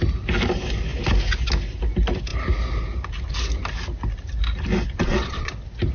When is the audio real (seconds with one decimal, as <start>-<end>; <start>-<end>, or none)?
0.0-5.0; 5.5-5.9